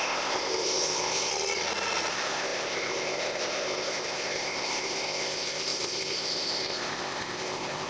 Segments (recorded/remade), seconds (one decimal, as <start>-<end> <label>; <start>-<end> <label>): 0.0-1.3 remade; 1.3-2.1 recorded; 2.1-7.9 remade